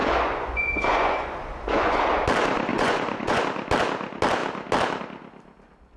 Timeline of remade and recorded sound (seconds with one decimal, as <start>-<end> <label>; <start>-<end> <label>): 0.0-2.0 remade; 2.0-2.7 recorded; 2.7-3.4 remade; 3.4-6.0 recorded